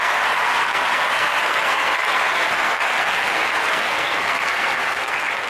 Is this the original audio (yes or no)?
no